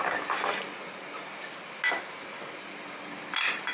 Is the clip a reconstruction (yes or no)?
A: no